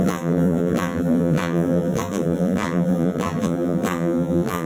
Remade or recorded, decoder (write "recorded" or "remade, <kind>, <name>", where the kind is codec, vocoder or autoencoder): remade, vocoder, BigVGAN v2